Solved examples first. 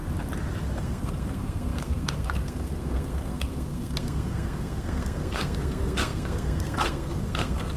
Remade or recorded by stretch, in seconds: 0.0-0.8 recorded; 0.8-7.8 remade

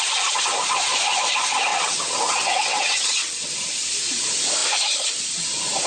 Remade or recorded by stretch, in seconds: 0.0-1.7 recorded; 1.7-3.5 remade; 3.5-5.9 recorded

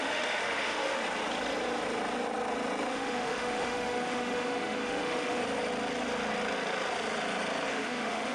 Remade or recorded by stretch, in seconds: 0.0-1.0 remade; 1.0-2.9 recorded; 2.9-5.4 remade; 5.4-7.7 recorded; 7.7-8.3 remade

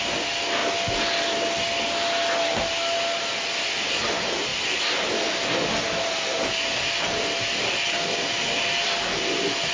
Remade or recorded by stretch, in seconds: 0.0-9.7 recorded